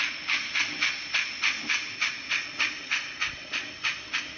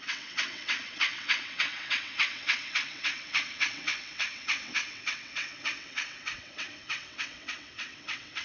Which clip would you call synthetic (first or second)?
second